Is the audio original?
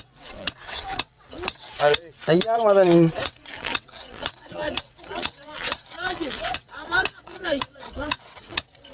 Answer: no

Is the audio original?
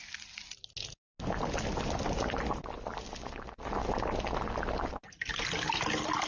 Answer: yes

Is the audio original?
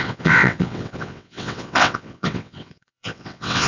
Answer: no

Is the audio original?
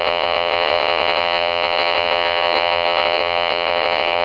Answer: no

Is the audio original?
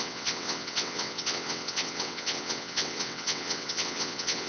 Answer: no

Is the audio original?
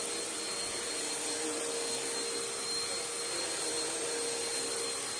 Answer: yes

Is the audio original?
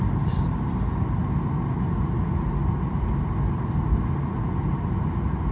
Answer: yes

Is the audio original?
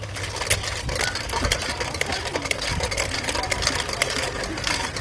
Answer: yes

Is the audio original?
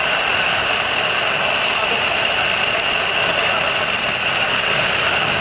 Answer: yes